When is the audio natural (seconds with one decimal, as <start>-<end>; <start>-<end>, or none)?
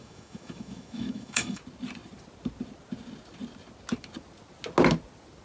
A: 1.6-5.4